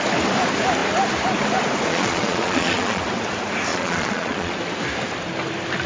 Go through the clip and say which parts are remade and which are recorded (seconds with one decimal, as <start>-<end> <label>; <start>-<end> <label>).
0.0-1.9 recorded; 1.9-3.0 remade; 3.0-3.7 recorded; 3.7-4.5 remade; 4.5-5.9 recorded